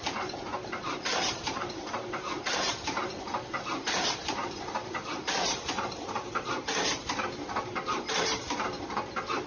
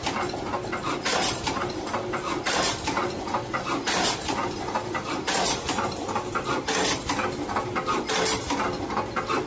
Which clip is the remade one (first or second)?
first